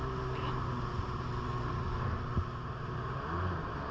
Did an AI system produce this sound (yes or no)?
no